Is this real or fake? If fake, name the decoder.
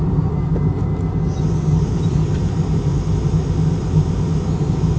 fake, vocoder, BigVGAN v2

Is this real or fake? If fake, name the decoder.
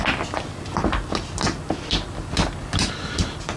real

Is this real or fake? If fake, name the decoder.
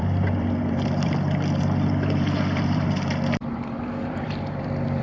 fake, vocoder, BigVGAN v2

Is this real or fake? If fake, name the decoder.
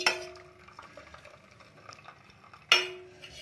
real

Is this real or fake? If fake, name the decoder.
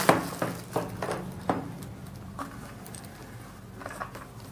real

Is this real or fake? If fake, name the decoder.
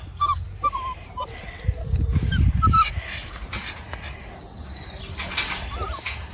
real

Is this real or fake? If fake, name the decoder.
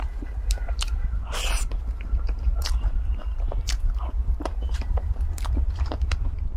fake, vocoder, BigVGAN v2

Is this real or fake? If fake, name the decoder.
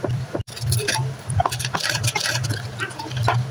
fake, vocoder, BigVGAN v2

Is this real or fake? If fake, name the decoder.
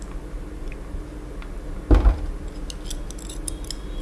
real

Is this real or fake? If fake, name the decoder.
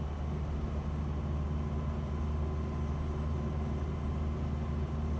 real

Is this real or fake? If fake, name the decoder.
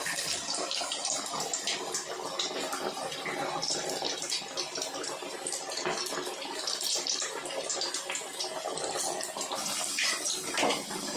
real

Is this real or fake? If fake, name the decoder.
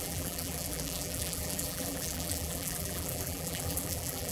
fake, vocoder, BigVGAN v2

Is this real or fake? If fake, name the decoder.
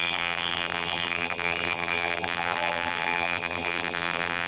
fake, vocoder, BigVGAN v2